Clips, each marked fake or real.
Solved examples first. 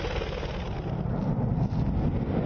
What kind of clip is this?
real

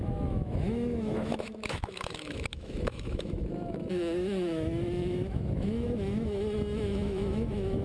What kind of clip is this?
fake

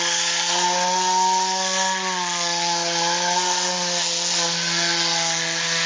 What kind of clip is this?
real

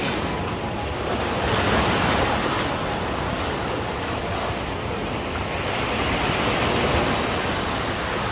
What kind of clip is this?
real